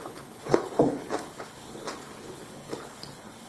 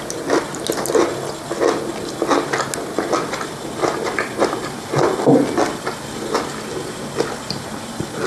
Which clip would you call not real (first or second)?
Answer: first